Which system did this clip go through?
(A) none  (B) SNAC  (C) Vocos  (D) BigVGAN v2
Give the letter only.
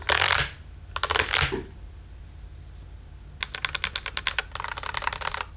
A